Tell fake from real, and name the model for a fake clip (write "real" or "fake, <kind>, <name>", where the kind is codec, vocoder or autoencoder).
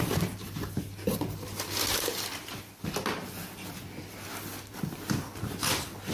real